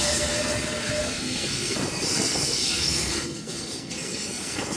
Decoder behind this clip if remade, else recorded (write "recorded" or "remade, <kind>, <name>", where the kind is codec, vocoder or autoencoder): remade, codec, SNAC